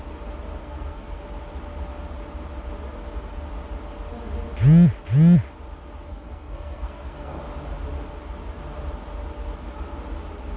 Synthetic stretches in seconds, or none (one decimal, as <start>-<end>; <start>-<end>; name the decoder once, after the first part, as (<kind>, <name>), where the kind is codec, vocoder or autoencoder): 0.6-1.2 (codec, SNAC); 6.1-7.4